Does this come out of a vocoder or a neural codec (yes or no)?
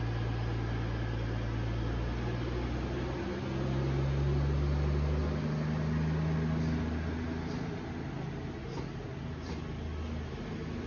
no